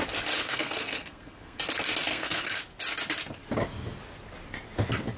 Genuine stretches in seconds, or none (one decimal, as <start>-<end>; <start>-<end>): 0.0-0.4; 1.6-2.1; 2.6-5.2